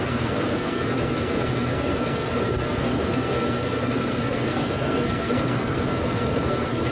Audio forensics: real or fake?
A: fake